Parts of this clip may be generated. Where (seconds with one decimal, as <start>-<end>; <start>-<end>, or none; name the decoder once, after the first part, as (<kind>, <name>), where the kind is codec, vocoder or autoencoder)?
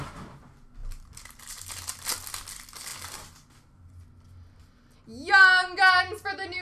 none